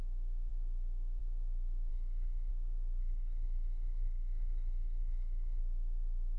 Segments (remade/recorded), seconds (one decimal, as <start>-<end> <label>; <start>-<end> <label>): 0.0-1.9 recorded; 1.9-2.5 remade; 2.5-3.0 recorded; 3.0-5.6 remade; 5.6-6.4 recorded